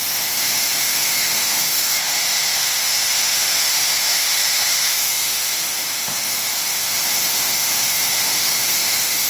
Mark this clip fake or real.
fake